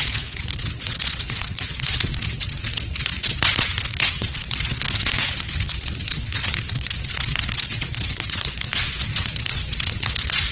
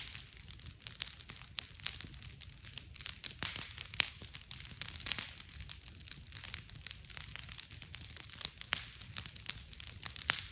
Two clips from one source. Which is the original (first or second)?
second